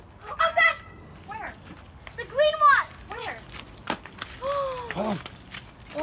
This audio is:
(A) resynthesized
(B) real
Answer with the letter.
B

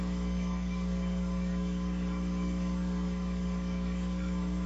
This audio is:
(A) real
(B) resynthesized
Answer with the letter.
B